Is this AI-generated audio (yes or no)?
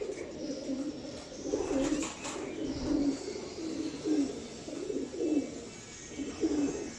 no